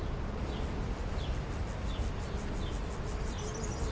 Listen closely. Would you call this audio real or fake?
real